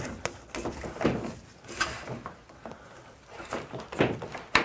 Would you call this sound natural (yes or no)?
yes